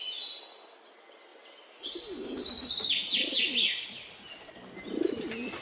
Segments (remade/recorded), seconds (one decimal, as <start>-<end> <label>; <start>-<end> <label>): 0.0-5.6 recorded